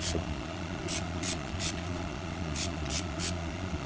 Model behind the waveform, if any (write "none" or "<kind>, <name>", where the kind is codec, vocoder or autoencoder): vocoder, Vocos